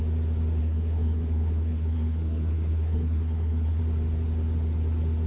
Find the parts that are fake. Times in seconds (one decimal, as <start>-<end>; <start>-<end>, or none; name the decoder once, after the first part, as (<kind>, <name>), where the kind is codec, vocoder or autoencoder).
0.6-3.8 (codec, SNAC)

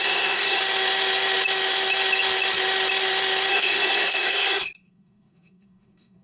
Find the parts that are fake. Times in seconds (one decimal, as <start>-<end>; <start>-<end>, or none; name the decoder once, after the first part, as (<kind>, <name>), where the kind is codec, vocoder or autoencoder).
0.0-0.6 (codec, SNAC); 3.5-6.2